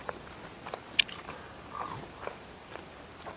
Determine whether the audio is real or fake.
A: real